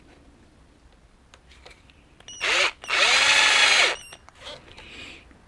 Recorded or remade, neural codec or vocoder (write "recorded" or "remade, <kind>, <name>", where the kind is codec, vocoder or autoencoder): recorded